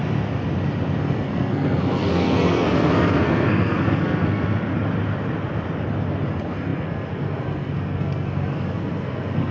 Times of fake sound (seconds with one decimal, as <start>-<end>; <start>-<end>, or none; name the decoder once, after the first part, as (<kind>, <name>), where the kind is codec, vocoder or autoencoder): 1.0-4.7 (codec, SNAC); 6.3-9.5